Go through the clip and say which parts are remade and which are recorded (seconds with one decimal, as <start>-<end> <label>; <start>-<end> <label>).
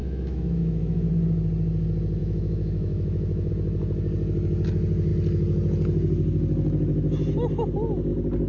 0.0-1.1 remade; 1.1-2.2 recorded; 2.2-3.5 remade; 3.5-8.5 recorded